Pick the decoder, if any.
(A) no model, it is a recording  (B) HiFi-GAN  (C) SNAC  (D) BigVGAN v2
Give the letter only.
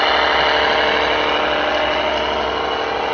A